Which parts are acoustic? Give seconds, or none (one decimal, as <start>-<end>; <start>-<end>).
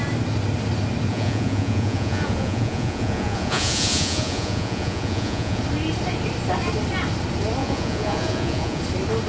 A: 0.0-1.1; 5.6-7.6; 8.8-9.3